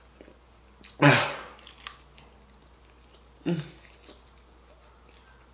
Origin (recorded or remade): recorded